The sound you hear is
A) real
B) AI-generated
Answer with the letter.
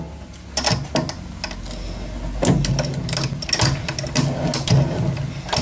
A